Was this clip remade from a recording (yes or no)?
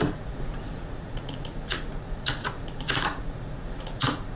yes